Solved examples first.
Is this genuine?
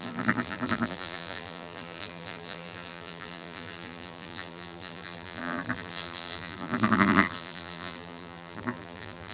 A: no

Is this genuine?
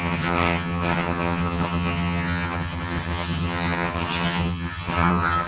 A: no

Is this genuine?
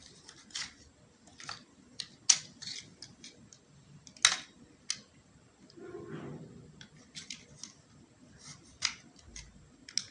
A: yes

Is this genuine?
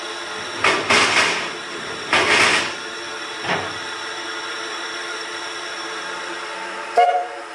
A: no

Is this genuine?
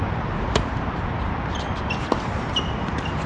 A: yes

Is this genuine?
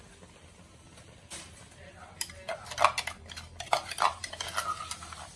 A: yes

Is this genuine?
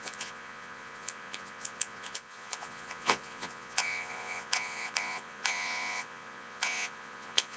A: no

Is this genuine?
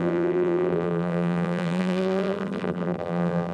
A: no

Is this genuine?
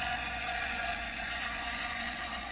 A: no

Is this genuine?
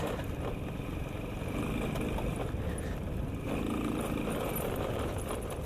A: yes